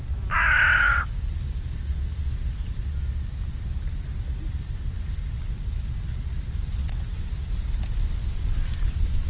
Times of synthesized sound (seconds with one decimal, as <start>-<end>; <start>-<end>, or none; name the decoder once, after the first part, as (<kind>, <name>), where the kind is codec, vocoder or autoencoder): 6.8-7.3 (vocoder, WaveNeXt)